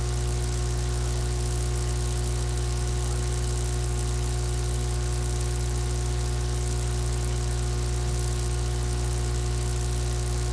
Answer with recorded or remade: recorded